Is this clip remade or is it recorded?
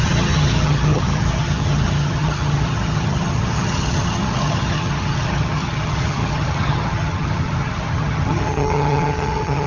remade